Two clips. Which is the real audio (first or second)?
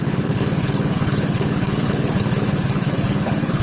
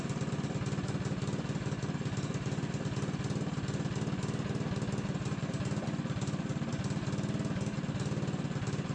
second